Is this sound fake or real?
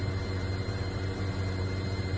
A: fake